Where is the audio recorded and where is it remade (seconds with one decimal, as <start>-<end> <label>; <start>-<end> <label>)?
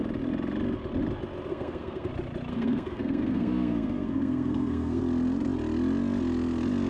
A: 0.0-1.5 recorded; 1.5-2.1 remade; 2.1-2.5 recorded; 2.5-5.0 remade; 5.0-6.9 recorded